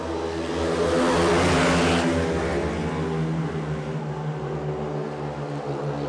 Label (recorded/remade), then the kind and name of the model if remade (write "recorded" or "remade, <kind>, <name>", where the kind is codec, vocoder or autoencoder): recorded